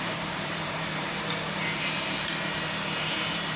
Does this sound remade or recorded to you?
remade